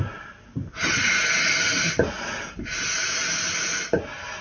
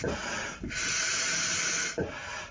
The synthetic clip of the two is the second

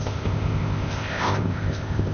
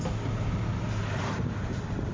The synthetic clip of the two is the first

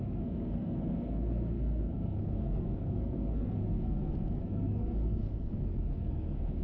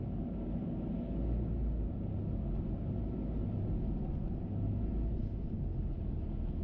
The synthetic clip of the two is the first